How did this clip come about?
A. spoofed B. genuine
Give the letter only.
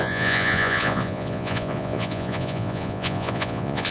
A